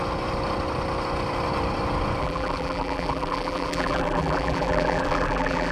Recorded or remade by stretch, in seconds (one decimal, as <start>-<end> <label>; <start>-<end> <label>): 0.0-2.2 recorded; 2.2-5.7 remade